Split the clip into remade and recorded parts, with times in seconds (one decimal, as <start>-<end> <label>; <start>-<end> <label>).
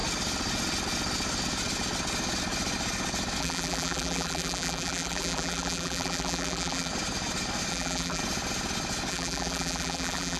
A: 0.0-3.4 recorded; 3.4-6.9 remade; 6.9-7.7 recorded; 7.7-8.2 remade; 8.2-9.1 recorded; 9.1-10.4 remade